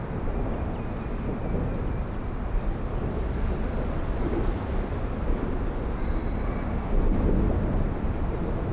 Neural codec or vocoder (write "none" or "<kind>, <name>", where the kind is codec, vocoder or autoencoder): none